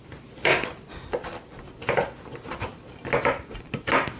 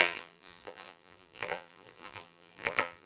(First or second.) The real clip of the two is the first